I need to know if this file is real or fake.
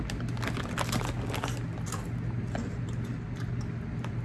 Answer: real